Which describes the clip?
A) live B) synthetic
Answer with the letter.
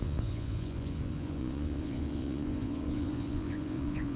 B